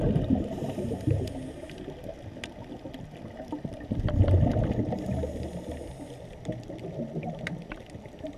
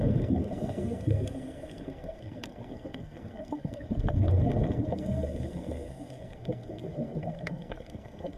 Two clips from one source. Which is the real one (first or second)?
first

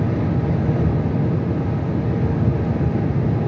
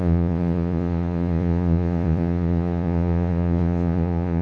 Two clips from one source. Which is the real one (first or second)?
first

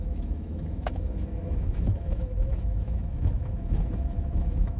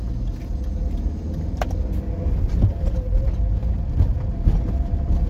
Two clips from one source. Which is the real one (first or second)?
second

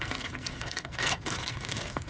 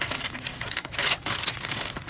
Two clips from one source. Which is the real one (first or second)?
second